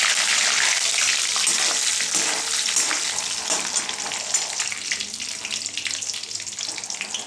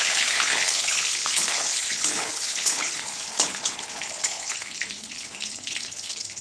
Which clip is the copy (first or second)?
second